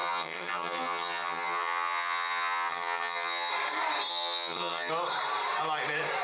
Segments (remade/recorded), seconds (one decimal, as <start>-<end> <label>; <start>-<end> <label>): 0.0-3.5 remade; 3.5-4.1 recorded; 4.1-4.9 remade; 4.9-6.2 recorded